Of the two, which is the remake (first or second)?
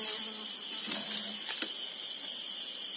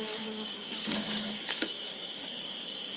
second